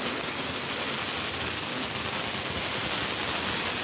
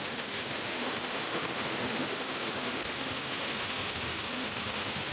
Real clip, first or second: first